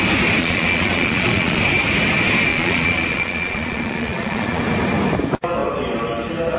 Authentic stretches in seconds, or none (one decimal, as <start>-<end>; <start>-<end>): 0.0-0.4; 1.6-2.5; 4.6-6.6

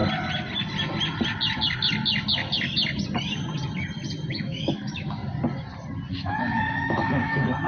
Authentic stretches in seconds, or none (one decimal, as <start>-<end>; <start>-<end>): 0.0-4.3; 5.2-6.1

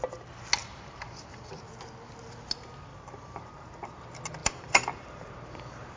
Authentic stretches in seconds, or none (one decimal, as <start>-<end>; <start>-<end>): 0.0-0.6; 1.7-2.9; 4.0-4.4

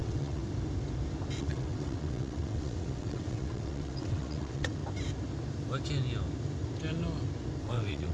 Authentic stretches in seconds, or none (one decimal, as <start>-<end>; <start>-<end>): 0.4-1.4; 4.8-7.6

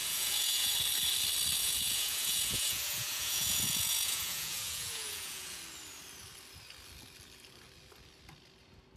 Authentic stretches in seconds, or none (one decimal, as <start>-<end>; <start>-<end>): 0.7-1.6; 5.6-9.0

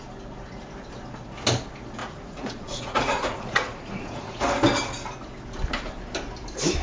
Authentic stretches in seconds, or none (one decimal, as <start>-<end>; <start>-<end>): 0.0-2.0; 4.4-6.8